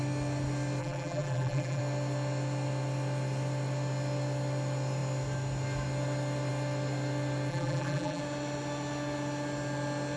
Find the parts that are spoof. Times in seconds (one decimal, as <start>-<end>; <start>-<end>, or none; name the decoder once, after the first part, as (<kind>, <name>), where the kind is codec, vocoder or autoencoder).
0.8-1.8 (vocoder, BigVGAN v2); 7.5-8.2

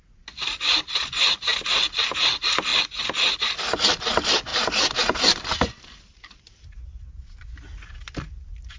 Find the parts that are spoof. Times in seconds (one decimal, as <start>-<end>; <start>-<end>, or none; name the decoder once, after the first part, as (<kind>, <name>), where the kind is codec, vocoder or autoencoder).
4.5-6.4 (vocoder, BigVGAN v2)

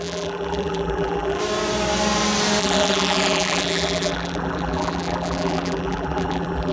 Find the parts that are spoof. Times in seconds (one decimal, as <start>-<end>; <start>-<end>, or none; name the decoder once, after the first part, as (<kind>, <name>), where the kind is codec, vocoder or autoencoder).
0.0-1.4 (vocoder, BigVGAN v2); 2.6-6.7

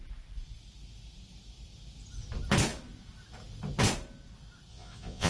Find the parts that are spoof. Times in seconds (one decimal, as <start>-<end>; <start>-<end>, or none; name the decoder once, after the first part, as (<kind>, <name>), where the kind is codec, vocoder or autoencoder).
4.7-5.3 (vocoder, Vocos)

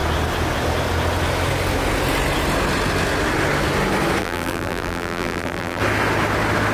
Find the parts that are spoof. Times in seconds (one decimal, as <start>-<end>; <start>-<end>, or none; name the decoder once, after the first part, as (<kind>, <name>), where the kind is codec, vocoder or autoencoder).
4.2-5.8 (vocoder, BigVGAN v2)

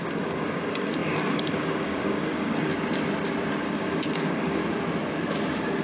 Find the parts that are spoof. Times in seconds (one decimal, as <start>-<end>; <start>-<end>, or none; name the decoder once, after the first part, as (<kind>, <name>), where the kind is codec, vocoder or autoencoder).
0.0-2.7 (codec, DAC); 3.7-4.6

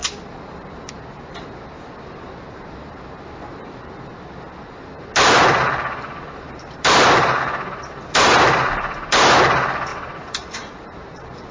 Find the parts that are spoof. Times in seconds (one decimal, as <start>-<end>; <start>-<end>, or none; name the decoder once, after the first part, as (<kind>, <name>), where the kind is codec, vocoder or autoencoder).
none